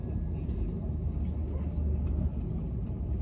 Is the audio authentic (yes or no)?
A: yes